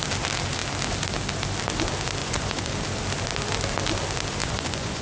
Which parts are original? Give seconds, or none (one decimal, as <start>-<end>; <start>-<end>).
0.0-2.2; 2.7-4.4